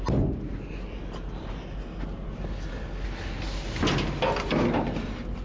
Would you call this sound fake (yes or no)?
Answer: no